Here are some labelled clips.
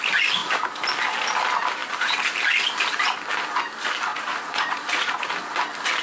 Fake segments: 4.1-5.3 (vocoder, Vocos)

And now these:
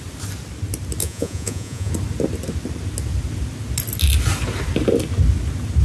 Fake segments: 1.0-1.9 (vocoder, Vocos)

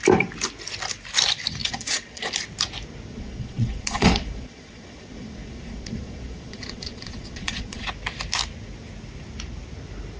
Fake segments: 1.6-2.3 (vocoder, Vocos); 3.1-7.9

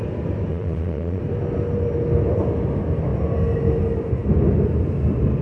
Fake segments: 0.5-1.2 (vocoder, Vocos)

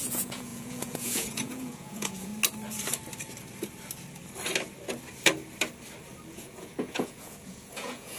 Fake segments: 0.0-2.3 (vocoder, Vocos); 6.3-8.2

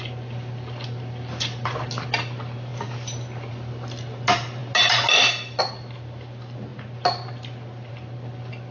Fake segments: none